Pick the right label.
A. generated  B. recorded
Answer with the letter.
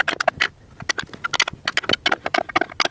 B